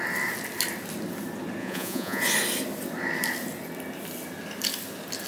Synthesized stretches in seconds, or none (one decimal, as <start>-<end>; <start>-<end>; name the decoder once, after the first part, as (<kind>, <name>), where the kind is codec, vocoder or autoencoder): 1.6-2.2 (vocoder, Vocos)

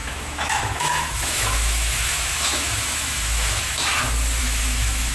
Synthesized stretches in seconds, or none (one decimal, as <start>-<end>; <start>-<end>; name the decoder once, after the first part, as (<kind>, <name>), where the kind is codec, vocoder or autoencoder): 0.0-3.9 (autoencoder, DAC-VAE); 4.4-5.1

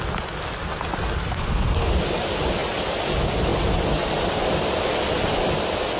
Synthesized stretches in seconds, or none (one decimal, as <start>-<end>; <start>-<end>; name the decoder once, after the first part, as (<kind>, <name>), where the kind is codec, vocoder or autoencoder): 1.2-1.9 (codec, SNAC)

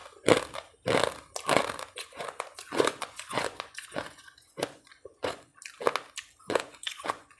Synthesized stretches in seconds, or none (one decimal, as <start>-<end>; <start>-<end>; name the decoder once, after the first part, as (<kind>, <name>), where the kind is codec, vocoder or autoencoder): 1.9-5.5 (vocoder, Vocos); 6.4-7.4